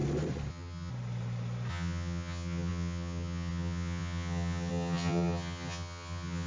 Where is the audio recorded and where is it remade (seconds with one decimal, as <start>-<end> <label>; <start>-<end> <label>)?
0.0-0.5 recorded; 0.5-0.9 remade; 0.9-1.7 recorded; 1.7-6.5 remade

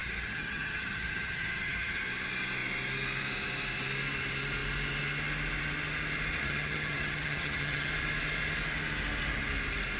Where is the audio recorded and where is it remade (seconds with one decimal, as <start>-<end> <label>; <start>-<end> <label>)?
0.0-2.0 remade; 2.0-6.4 recorded; 6.4-7.9 remade; 7.9-10.0 recorded

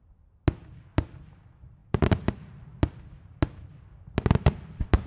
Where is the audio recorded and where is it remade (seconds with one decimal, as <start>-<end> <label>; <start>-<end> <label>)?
0.0-1.8 recorded; 1.8-2.6 remade; 2.6-5.1 recorded

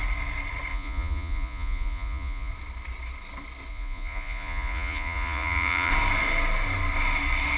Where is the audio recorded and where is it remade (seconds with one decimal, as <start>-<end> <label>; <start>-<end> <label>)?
0.0-0.7 recorded; 0.7-2.5 remade; 2.5-3.7 recorded; 3.7-5.9 remade; 5.9-7.6 recorded

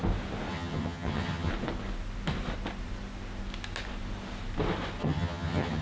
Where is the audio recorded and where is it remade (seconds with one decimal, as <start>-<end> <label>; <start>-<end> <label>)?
0.0-0.5 recorded; 0.5-1.5 remade; 1.5-5.0 recorded; 5.0-5.8 remade

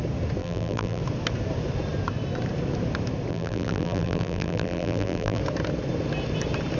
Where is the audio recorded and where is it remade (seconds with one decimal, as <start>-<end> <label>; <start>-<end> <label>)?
0.0-0.4 recorded; 0.4-1.0 remade; 1.0-3.3 recorded; 3.3-5.4 remade; 5.4-6.8 recorded

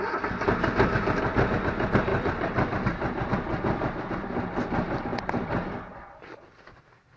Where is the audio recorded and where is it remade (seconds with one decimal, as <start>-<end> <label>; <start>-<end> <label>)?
0.0-2.1 recorded; 2.1-4.0 remade; 4.0-5.1 recorded; 5.1-6.8 remade; 6.8-7.2 recorded